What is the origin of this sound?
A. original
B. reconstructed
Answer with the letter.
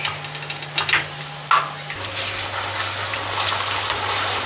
A